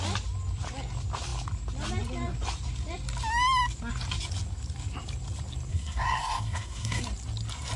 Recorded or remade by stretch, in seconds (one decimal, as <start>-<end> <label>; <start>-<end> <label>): 0.0-5.7 recorded; 5.7-7.0 remade; 7.0-7.8 recorded

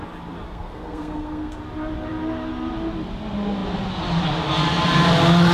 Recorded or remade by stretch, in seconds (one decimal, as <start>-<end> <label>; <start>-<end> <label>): 0.0-0.5 recorded; 0.5-1.6 remade; 1.6-5.5 recorded